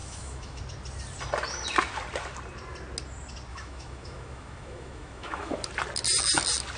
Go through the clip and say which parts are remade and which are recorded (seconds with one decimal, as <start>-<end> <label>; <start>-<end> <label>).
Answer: 0.0-0.6 remade; 0.6-3.5 recorded; 3.5-5.6 remade; 5.6-6.8 recorded